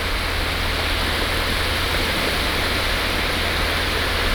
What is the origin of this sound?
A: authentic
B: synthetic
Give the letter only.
A